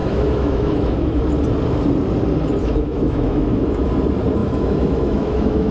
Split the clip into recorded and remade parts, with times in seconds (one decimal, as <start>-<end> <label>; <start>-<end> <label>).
0.0-1.2 remade; 1.2-2.6 recorded; 2.6-3.9 remade; 3.9-4.4 recorded; 4.4-5.7 remade